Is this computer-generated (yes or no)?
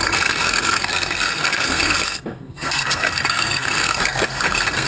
yes